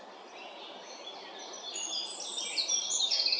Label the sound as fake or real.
real